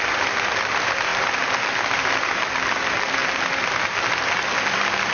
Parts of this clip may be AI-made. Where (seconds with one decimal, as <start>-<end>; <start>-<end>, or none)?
none